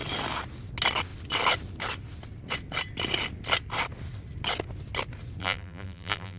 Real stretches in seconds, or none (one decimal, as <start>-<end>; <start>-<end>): 0.0-5.4